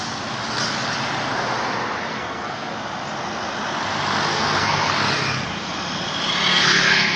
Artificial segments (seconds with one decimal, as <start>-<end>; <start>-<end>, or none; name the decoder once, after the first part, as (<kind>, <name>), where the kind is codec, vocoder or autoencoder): 2.1-2.7 (codec, SNAC); 4.3-4.9; 6.5-7.2